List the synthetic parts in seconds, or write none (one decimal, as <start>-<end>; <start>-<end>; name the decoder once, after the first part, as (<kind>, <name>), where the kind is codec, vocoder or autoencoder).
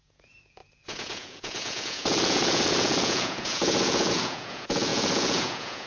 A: 0.0-5.9 (vocoder, Vocos)